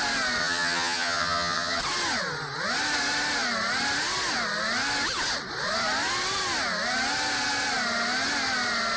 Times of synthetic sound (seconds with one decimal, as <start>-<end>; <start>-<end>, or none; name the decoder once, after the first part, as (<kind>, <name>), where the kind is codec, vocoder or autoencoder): 0.4-1.8 (vocoder, HiFi-GAN)